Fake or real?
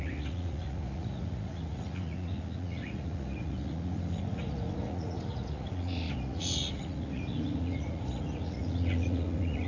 fake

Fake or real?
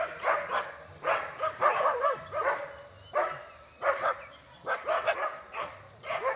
real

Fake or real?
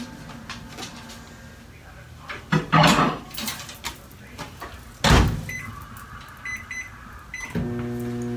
real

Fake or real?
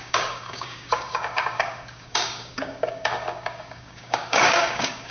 fake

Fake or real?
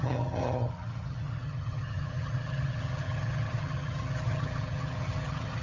fake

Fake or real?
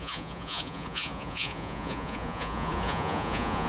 fake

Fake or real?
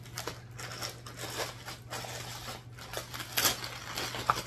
real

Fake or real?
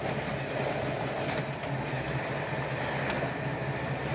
real